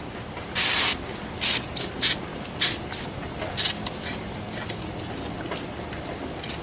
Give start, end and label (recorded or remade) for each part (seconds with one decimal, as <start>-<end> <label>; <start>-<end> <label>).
0.0-6.6 recorded